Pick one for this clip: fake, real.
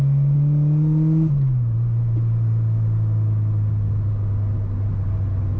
real